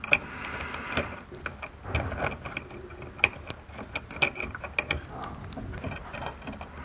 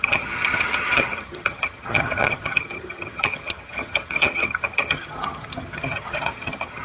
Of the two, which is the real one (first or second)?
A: first